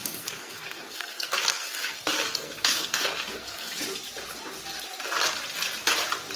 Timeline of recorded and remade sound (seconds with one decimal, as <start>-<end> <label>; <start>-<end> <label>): 0.0-3.8 remade; 3.8-6.4 recorded

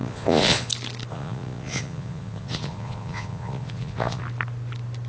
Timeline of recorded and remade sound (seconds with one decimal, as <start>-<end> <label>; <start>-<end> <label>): 0.0-0.7 remade; 0.7-1.1 recorded; 1.1-4.2 remade; 4.2-5.1 recorded